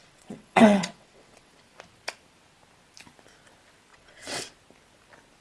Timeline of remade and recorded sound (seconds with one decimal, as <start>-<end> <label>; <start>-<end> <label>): 0.0-1.5 remade; 1.5-3.9 recorded; 3.9-4.5 remade; 4.5-5.4 recorded